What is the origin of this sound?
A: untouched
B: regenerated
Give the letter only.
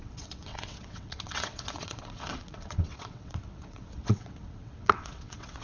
B